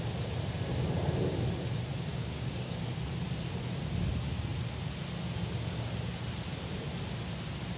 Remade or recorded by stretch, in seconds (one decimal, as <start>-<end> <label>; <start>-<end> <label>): 0.0-2.1 recorded; 2.1-2.8 remade; 2.8-7.8 recorded